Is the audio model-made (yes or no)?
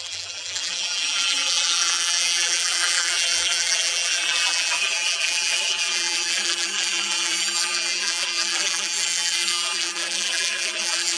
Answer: yes